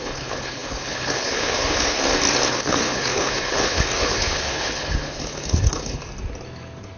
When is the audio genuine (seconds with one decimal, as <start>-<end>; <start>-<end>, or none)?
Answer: 2.0-2.5; 6.0-7.0